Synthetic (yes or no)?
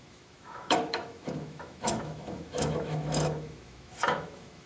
yes